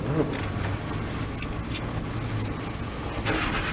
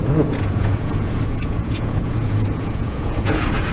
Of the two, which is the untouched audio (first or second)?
first